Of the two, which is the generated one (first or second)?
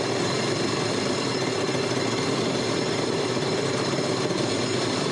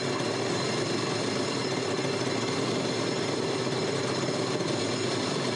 first